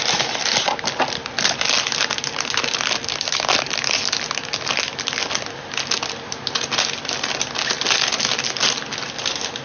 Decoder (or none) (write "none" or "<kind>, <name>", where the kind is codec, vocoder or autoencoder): none